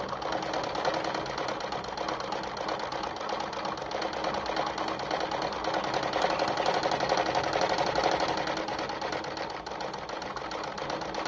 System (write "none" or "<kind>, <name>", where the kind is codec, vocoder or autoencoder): none